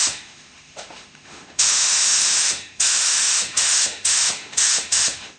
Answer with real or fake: fake